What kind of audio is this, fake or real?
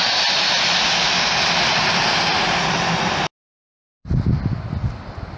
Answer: real